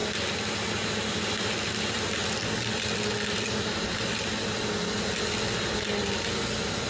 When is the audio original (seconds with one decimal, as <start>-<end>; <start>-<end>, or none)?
0.0-6.9